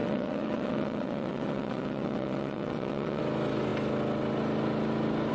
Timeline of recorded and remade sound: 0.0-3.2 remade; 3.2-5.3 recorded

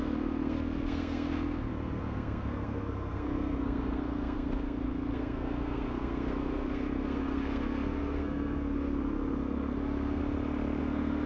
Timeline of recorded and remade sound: 0.0-10.2 remade; 10.2-10.8 recorded; 10.8-11.3 remade

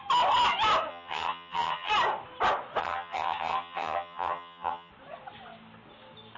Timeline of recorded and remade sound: 0.0-0.9 recorded; 0.9-1.9 remade; 1.9-2.8 recorded; 2.8-4.9 remade; 4.9-6.4 recorded

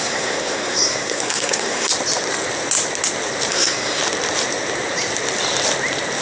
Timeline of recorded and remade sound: 0.0-1.9 remade; 1.9-3.5 recorded; 3.5-4.0 remade; 4.0-6.2 recorded

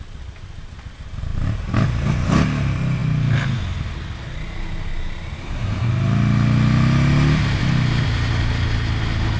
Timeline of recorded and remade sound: 0.0-5.4 recorded; 5.4-5.9 remade; 5.9-9.4 recorded

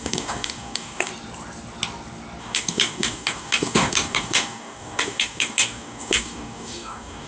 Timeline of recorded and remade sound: 0.0-1.1 remade; 1.1-2.4 recorded; 2.4-7.3 remade

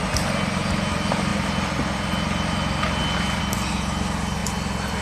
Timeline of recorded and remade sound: 0.0-5.0 recorded

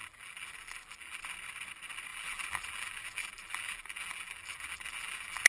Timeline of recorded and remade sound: 0.0-1.2 remade; 1.2-2.1 recorded; 2.1-5.5 remade